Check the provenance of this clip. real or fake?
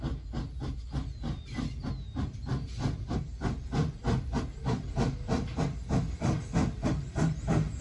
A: real